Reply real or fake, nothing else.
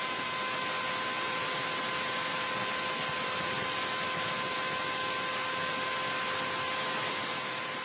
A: real